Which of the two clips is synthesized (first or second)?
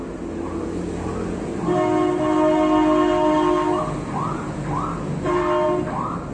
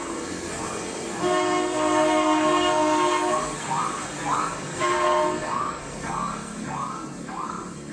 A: second